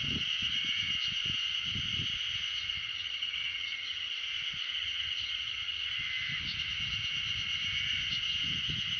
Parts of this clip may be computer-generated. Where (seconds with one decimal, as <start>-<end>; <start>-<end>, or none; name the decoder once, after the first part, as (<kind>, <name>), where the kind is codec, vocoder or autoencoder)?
2.8-4.1 (vocoder, HiFi-GAN); 4.7-5.9